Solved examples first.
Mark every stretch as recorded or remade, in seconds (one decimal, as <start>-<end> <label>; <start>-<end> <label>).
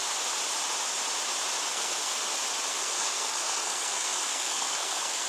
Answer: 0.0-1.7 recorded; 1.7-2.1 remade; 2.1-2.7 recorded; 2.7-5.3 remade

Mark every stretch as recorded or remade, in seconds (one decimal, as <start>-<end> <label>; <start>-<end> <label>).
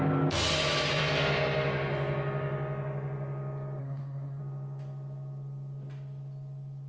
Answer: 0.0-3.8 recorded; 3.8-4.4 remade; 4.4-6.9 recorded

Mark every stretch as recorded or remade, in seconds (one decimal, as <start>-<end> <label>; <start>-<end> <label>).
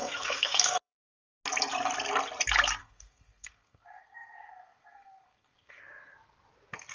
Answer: 0.0-1.2 remade; 1.2-2.8 recorded; 2.8-5.8 remade; 5.8-6.9 recorded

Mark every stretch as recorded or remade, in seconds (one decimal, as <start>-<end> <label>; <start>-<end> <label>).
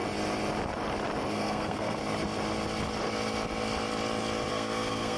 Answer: 0.0-1.3 recorded; 1.3-2.0 remade; 2.0-4.5 recorded; 4.5-5.2 remade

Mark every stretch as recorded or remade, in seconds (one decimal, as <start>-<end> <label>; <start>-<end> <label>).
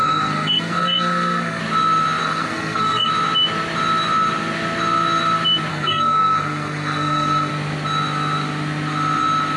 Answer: 0.0-1.6 remade; 1.6-2.2 recorded; 2.2-3.1 remade; 3.1-5.7 recorded; 5.7-7.5 remade; 7.5-9.6 recorded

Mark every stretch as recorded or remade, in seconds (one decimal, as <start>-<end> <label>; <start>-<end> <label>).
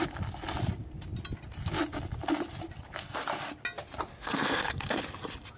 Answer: 0.0-4.1 recorded; 4.1-5.0 remade; 5.0-5.6 recorded